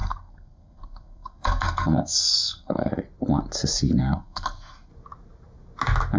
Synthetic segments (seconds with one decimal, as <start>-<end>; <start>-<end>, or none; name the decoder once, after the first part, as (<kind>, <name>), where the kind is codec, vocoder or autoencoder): 0.0-2.9 (codec, SNAC); 4.0-4.9